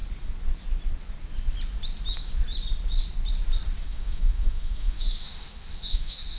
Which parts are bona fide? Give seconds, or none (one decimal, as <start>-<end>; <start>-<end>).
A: 0.0-3.8